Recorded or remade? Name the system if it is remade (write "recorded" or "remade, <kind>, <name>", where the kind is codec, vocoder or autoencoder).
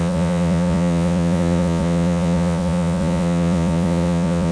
remade, vocoder, Vocos